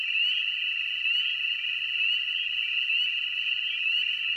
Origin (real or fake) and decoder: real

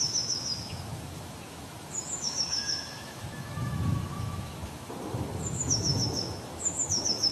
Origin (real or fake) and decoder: fake, autoencoder, DAC-VAE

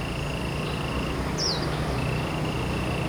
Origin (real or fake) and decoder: real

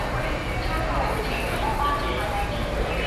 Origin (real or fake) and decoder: real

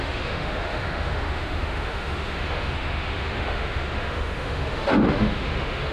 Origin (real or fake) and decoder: fake, autoencoder, DAC-VAE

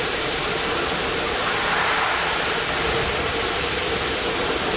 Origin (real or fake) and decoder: real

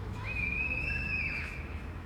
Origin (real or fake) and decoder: fake, autoencoder, DAC-VAE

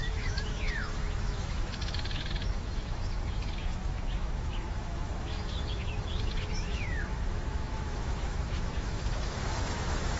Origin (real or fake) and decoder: fake, autoencoder, DAC-VAE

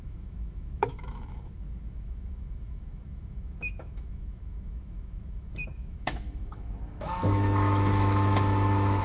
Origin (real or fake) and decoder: fake, autoencoder, DAC-VAE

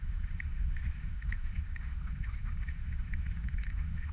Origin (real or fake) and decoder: fake, autoencoder, DAC-VAE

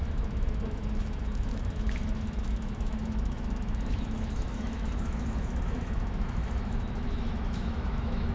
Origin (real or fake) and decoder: fake, autoencoder, DAC-VAE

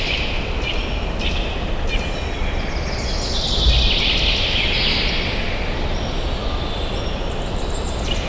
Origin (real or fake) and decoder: real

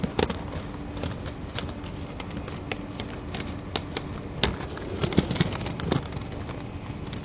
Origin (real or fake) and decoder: real